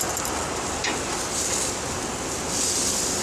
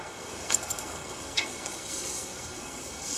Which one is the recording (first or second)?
first